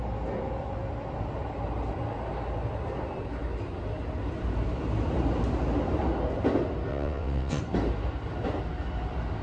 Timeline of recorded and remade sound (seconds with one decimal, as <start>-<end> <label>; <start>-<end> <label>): 0.0-6.9 recorded; 6.9-7.6 remade; 7.6-9.4 recorded